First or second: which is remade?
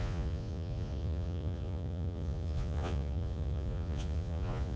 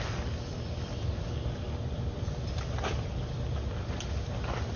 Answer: first